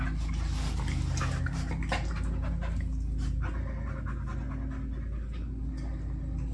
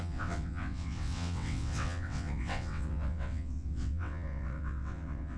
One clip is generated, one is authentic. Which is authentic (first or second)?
first